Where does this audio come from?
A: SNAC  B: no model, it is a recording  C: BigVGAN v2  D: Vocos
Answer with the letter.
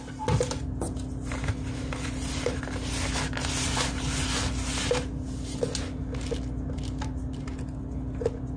B